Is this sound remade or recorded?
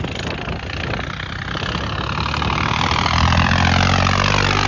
recorded